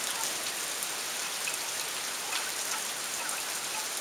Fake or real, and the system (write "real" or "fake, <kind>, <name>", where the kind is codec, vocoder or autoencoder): real